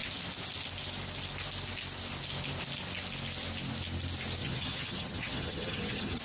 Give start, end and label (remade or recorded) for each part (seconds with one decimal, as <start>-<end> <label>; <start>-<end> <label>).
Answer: 0.0-4.4 recorded; 4.4-6.2 remade

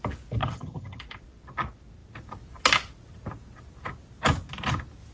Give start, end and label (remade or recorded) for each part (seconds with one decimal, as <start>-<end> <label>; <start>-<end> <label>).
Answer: 0.0-0.4 recorded; 0.4-1.0 remade; 1.0-5.1 recorded

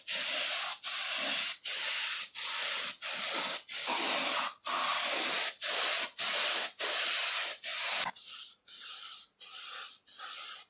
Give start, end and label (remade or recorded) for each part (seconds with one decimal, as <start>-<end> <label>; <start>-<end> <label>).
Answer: 0.0-7.7 recorded; 7.7-9.2 remade; 9.2-10.7 recorded

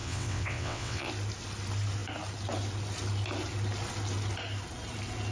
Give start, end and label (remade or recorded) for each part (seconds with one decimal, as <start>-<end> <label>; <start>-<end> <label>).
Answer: 0.0-1.1 remade; 1.1-5.3 recorded

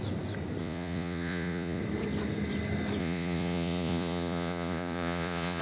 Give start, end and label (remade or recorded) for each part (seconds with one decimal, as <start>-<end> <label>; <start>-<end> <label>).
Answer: 0.0-0.6 recorded; 0.6-1.8 remade; 1.8-3.0 recorded; 3.0-5.6 remade

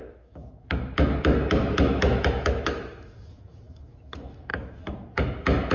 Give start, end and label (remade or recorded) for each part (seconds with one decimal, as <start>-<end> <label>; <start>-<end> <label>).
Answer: 0.0-5.7 remade